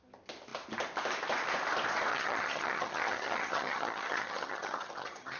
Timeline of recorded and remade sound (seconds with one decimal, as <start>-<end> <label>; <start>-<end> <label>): 0.0-2.1 recorded; 2.1-5.4 remade